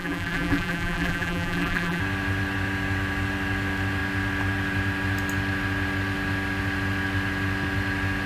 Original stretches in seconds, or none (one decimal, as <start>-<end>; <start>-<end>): 2.0-8.3